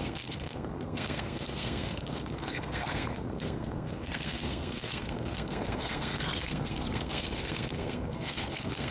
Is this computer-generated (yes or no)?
yes